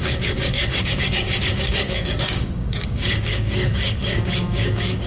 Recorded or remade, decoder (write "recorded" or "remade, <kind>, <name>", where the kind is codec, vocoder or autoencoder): remade, codec, DAC